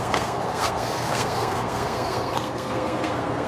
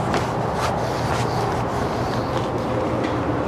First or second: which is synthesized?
first